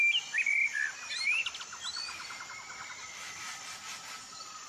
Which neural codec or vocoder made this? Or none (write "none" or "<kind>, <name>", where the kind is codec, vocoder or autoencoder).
none